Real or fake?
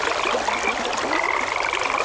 real